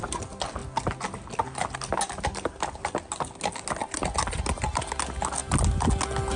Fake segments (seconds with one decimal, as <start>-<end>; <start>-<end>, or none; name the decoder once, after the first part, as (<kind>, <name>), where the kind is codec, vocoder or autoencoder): none